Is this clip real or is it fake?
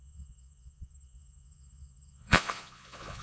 fake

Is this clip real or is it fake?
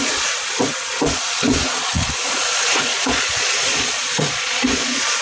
fake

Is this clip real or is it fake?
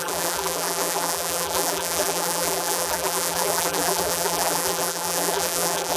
fake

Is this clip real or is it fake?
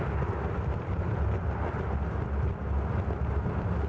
real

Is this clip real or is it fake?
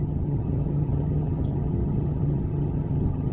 fake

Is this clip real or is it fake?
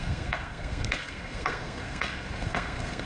fake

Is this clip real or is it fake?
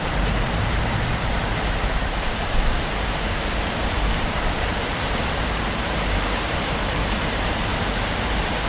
fake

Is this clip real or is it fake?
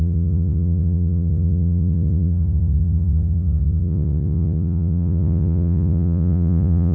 fake